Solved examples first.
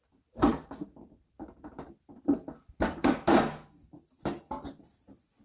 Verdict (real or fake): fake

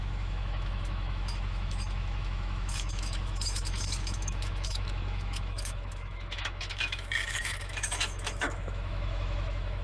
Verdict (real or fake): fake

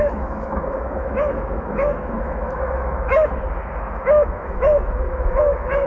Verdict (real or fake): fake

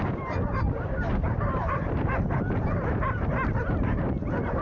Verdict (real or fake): fake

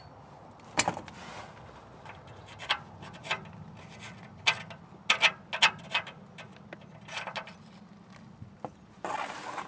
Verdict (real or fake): real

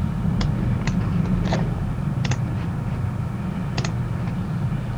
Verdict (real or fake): real